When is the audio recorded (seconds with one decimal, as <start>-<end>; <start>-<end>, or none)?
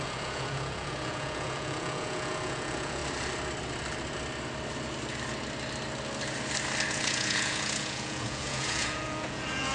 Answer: 3.0-6.9